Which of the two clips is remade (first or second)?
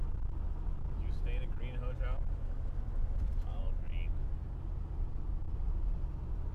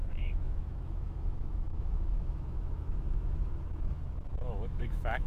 second